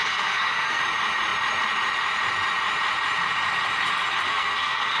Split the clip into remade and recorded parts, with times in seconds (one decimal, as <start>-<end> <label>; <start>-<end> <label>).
0.0-0.8 remade; 0.8-4.3 recorded; 4.3-5.0 remade